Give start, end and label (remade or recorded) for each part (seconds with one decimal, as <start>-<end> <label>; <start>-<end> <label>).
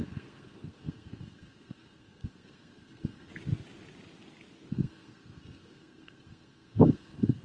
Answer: 0.0-3.3 remade; 3.3-4.7 recorded; 4.7-7.4 remade